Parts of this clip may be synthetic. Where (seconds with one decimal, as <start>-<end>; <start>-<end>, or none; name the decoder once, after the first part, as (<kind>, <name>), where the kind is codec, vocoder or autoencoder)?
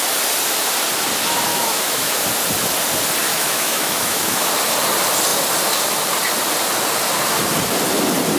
1.5-2.2 (autoencoder, DAC-VAE); 3.3-4.5